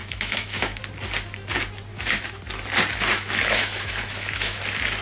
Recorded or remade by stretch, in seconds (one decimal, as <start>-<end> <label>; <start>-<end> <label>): 0.0-0.8 remade; 0.8-1.9 recorded; 1.9-2.4 remade; 2.4-3.1 recorded; 3.1-4.6 remade; 4.6-5.0 recorded